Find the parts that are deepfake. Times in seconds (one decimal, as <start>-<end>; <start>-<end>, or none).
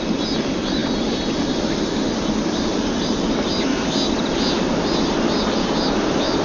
none